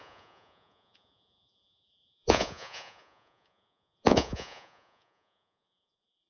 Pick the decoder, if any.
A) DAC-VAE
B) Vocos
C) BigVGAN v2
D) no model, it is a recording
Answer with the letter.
B